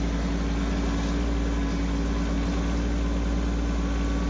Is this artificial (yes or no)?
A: no